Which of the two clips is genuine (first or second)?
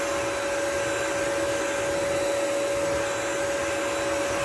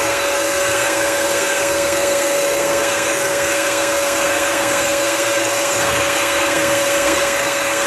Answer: first